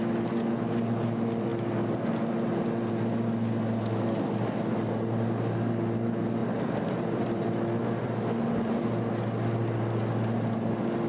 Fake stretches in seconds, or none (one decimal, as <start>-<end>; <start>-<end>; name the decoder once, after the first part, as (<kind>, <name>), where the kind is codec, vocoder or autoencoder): 6.4-8.8 (vocoder, BigVGAN v2)